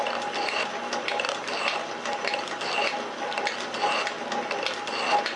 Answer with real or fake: real